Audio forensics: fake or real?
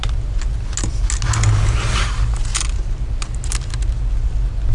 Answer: real